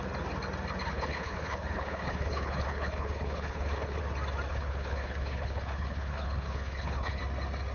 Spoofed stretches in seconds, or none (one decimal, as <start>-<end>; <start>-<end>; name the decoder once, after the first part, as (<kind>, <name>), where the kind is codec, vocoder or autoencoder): 0.9-4.0 (codec, HILCodec); 4.5-7.2